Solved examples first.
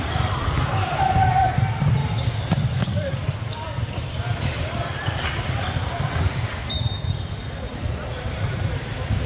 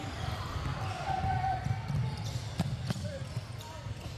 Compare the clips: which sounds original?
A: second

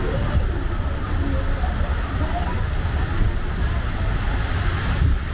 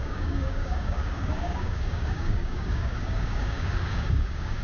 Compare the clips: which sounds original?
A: first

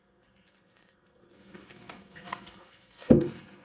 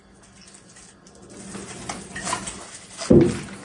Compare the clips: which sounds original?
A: second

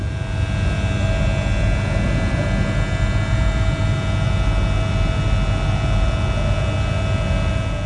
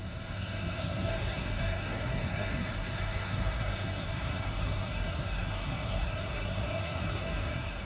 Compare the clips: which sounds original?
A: first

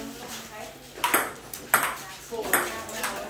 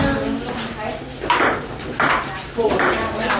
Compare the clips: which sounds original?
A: first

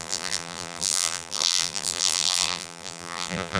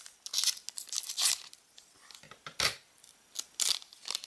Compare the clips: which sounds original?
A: second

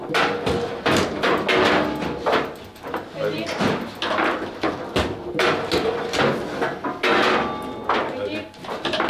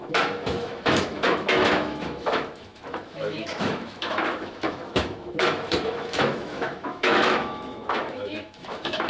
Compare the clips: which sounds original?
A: first